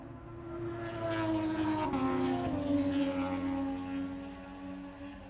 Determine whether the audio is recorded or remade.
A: recorded